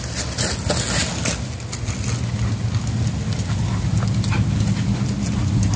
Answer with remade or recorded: recorded